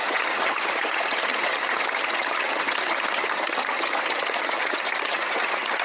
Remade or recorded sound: remade